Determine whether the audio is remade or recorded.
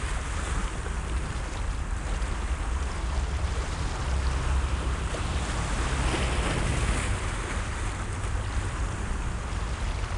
recorded